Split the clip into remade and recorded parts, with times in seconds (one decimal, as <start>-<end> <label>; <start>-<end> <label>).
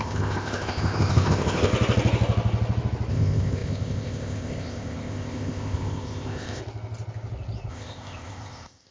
0.0-1.7 remade; 1.7-3.1 recorded; 3.1-6.6 remade; 6.6-7.7 recorded; 7.7-8.9 remade